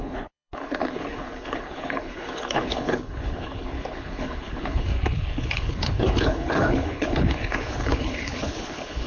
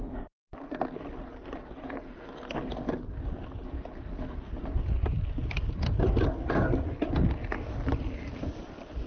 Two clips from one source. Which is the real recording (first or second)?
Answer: second